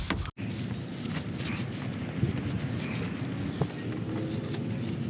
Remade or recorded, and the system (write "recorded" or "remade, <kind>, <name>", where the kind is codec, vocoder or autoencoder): recorded